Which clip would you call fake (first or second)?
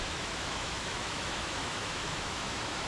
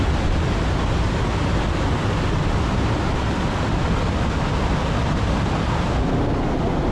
first